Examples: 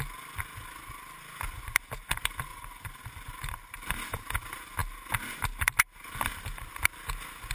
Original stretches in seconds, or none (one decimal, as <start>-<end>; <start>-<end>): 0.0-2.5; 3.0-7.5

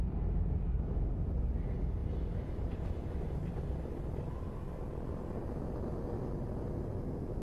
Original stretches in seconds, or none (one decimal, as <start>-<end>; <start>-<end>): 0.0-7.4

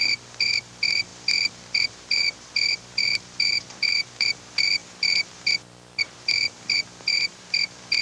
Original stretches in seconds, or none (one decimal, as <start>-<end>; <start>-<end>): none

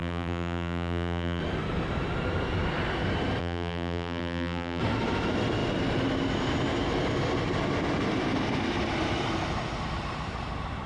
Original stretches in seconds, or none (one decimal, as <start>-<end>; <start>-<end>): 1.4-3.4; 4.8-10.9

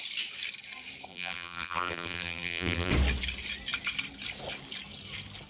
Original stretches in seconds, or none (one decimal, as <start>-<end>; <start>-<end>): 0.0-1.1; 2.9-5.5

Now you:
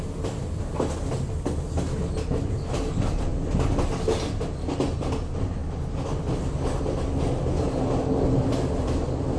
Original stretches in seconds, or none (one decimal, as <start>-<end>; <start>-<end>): 0.0-9.4